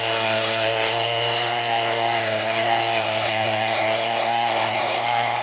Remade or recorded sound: remade